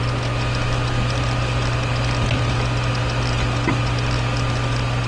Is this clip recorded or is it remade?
recorded